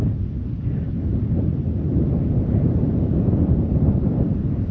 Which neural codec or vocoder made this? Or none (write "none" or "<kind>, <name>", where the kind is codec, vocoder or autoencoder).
none